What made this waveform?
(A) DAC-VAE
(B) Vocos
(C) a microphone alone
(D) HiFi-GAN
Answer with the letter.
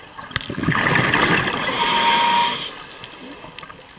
C